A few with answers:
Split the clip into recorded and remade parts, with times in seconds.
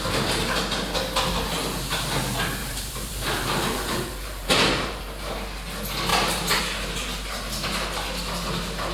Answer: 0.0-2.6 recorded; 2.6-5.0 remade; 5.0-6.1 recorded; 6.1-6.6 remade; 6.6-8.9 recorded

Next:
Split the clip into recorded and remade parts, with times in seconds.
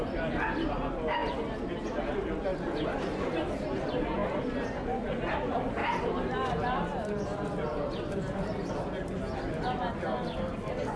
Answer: 0.0-11.0 recorded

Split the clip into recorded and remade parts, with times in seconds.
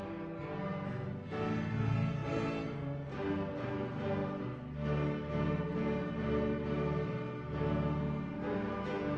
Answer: 0.0-2.2 recorded; 2.2-3.7 remade; 3.7-9.2 recorded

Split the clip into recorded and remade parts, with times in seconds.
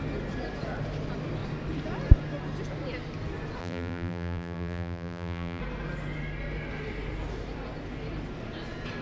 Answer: 0.0-3.6 recorded; 3.6-5.6 remade; 5.6-9.0 recorded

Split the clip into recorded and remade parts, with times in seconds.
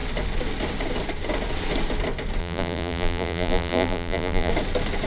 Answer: 0.0-2.4 recorded; 2.4-4.5 remade; 4.5-5.1 recorded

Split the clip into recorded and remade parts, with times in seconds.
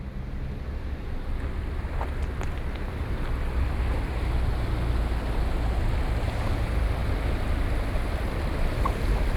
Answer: 0.0-9.4 recorded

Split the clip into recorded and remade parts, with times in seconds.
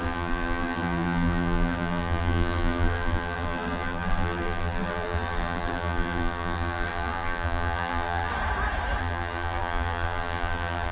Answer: 0.0-8.3 remade; 8.3-9.0 recorded; 9.0-10.9 remade